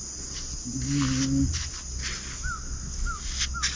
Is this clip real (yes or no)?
yes